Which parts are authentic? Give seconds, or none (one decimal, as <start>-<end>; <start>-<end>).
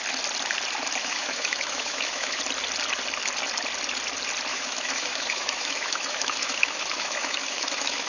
0.0-1.0; 2.4-4.5